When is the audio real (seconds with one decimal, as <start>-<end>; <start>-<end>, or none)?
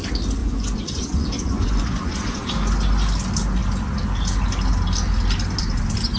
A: 0.0-0.4; 2.5-6.2